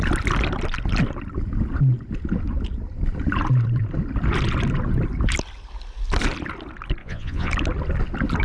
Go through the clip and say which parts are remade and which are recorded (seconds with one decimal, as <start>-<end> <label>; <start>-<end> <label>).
0.0-7.0 recorded; 7.0-7.5 remade; 7.5-8.4 recorded